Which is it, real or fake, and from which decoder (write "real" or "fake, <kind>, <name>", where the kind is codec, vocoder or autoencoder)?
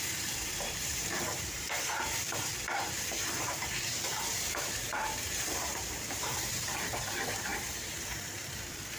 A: fake, vocoder, BigVGAN v2